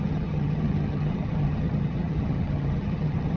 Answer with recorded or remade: remade